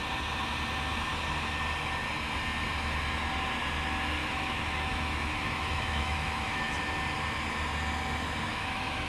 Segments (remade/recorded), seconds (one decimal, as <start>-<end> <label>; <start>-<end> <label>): 0.0-4.2 recorded; 4.2-6.8 remade; 6.8-8.5 recorded; 8.5-9.1 remade